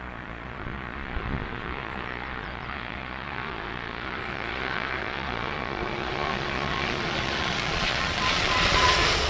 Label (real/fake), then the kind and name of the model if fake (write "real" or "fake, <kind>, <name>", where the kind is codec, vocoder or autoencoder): fake, vocoder, Vocos